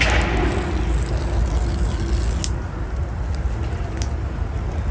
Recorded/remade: recorded